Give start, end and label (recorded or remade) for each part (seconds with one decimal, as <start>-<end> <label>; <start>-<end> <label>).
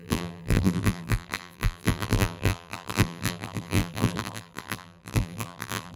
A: 0.0-6.0 remade